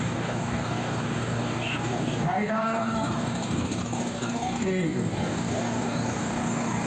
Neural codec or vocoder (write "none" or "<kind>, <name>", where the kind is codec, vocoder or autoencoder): codec, DAC